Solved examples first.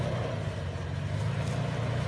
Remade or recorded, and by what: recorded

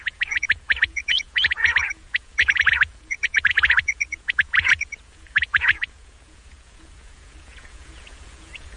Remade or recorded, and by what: remade, vocoder, Vocos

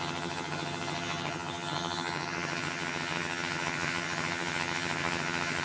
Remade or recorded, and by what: remade, vocoder, HiFi-GAN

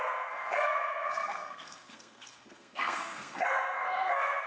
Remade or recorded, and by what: remade, codec, SNAC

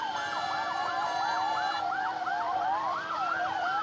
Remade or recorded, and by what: remade, vocoder, BigVGAN v2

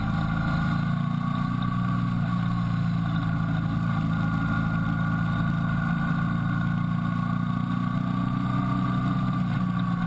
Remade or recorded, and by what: recorded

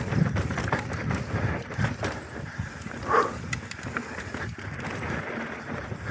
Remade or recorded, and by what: recorded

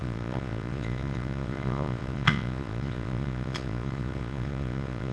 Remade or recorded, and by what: remade, vocoder, Vocos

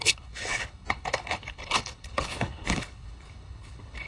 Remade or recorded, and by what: remade, codec, HILCodec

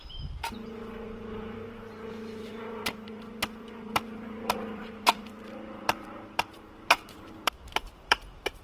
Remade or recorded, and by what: remade, vocoder, BigVGAN v2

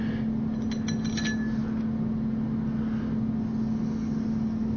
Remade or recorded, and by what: recorded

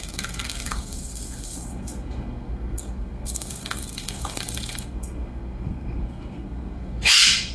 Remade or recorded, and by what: remade, codec, SNAC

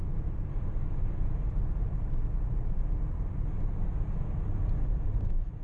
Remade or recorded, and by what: recorded